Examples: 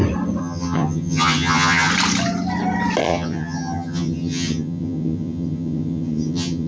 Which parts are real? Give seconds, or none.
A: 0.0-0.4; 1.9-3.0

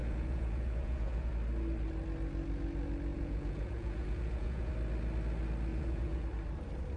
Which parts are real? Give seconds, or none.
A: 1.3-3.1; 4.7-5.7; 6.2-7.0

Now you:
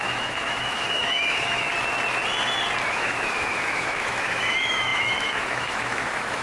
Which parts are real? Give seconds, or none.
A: 1.7-2.9